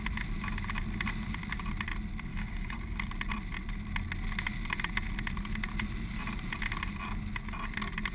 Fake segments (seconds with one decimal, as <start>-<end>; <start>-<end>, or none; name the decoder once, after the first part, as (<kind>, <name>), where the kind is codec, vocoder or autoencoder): 2.3-3.1 (codec, DAC)